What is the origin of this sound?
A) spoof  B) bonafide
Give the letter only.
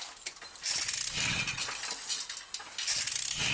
B